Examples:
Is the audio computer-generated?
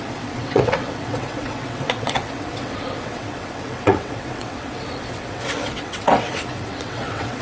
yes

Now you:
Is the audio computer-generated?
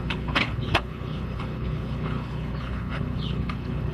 yes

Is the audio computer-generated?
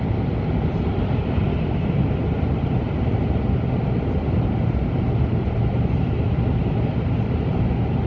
no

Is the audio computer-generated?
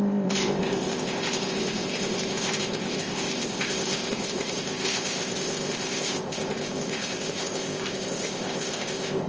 yes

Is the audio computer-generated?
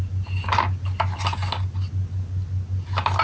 no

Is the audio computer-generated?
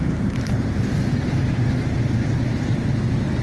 yes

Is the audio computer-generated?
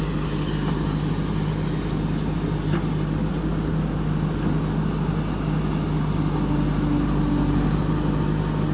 no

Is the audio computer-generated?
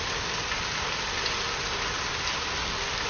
no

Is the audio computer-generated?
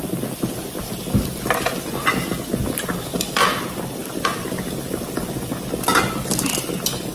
no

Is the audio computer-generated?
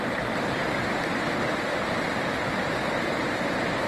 no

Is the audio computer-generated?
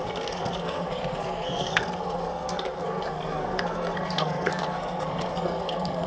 yes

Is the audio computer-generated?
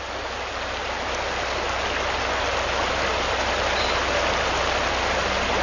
no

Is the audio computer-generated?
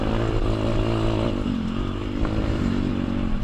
yes